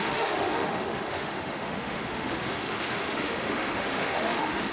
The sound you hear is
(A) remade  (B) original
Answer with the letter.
A